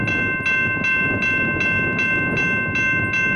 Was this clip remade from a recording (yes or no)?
no